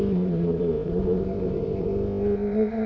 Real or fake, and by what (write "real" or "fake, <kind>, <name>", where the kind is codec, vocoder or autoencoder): fake, codec, ZipCodec